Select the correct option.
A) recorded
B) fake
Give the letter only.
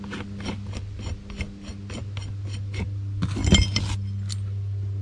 A